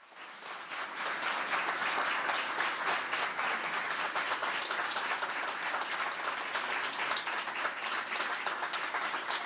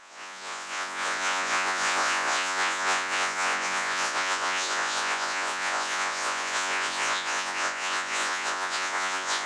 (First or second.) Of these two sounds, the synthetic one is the second